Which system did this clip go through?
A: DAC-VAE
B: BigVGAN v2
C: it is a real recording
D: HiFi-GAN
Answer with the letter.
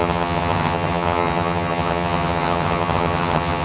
D